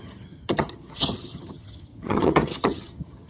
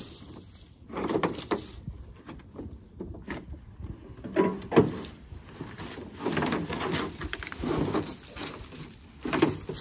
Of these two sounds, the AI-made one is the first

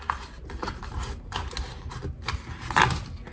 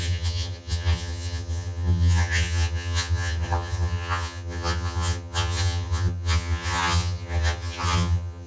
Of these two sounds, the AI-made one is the second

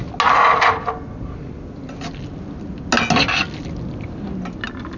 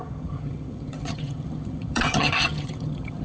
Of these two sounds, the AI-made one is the second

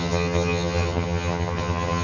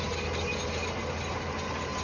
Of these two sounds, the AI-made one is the first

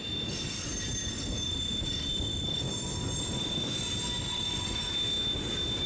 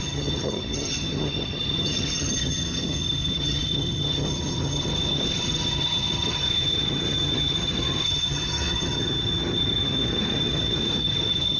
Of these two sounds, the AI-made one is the second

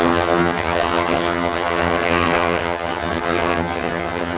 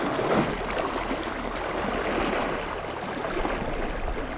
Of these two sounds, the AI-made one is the first